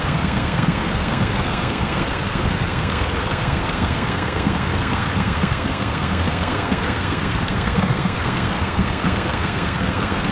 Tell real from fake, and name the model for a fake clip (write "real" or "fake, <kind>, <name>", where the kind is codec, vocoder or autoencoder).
fake, codec, SNAC